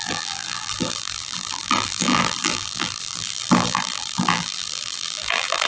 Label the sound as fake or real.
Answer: fake